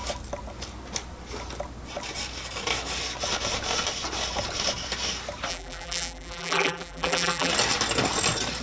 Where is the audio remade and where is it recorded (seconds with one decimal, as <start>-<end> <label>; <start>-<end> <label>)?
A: 0.0-5.5 recorded; 5.5-7.5 remade; 7.5-8.6 recorded